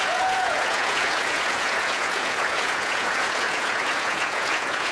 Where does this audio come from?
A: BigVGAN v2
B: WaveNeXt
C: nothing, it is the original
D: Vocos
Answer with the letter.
D